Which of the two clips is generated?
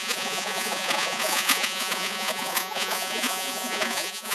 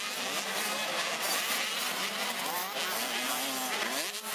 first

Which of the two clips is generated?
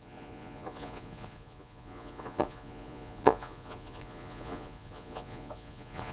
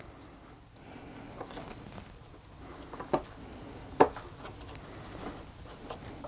first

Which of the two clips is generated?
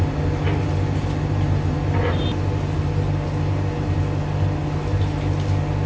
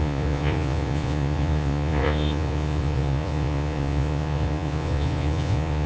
second